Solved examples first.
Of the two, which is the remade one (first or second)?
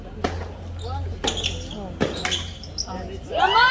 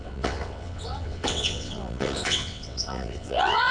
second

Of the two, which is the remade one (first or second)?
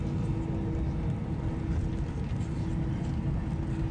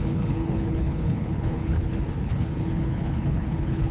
second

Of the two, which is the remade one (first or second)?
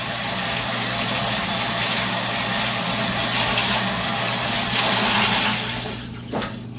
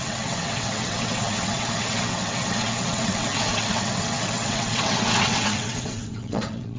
second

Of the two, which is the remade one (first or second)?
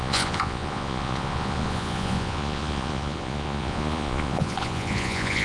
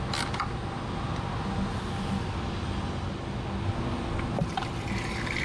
first